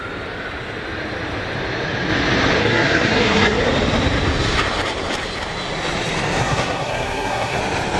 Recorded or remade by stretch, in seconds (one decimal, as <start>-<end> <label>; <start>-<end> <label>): 0.0-2.6 recorded; 2.6-3.6 remade; 3.6-6.4 recorded; 6.4-7.6 remade; 7.6-8.0 recorded